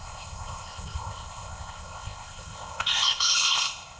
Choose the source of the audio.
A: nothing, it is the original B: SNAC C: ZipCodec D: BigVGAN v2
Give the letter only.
C